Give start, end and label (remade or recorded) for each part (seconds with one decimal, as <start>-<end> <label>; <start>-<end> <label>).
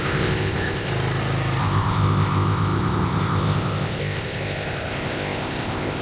0.0-0.9 remade; 0.9-1.6 recorded; 1.6-6.0 remade